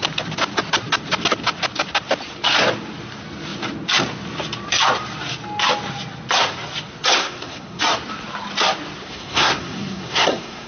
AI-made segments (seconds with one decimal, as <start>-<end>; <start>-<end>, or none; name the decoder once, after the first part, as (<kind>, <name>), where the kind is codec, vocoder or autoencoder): 7.2-7.8 (codec, SNAC); 9.1-10.7

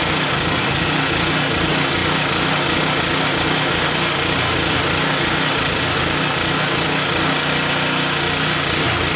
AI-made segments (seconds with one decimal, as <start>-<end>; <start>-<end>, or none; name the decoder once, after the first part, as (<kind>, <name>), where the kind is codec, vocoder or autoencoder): none